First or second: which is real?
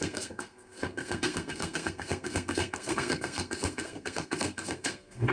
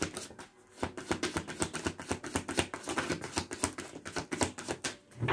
second